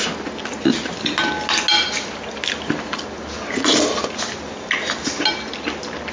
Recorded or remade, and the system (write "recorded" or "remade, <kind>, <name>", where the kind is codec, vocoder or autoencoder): recorded